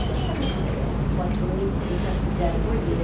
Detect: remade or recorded recorded